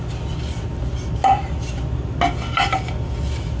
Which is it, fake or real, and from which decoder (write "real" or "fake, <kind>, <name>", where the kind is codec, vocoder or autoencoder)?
real